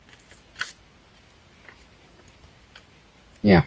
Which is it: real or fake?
real